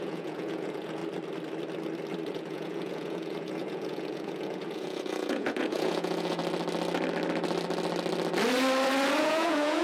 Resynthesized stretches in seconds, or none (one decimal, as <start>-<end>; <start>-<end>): 0.0-1.0; 2.3-6.4; 9.2-9.8